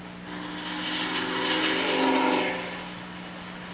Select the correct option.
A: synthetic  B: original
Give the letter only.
B